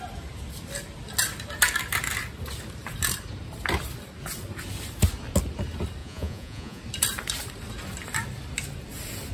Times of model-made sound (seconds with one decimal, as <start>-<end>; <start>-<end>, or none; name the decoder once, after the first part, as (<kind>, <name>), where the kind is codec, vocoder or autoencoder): 6.0-6.8 (vocoder, Vocos)